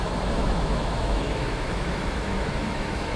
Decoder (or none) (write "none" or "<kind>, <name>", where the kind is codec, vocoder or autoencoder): autoencoder, DAC-VAE